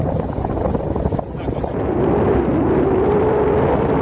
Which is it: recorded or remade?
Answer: recorded